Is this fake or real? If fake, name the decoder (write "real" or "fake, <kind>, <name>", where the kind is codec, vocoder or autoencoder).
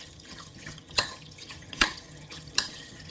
fake, vocoder, HiFi-GAN